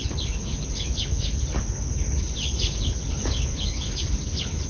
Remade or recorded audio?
remade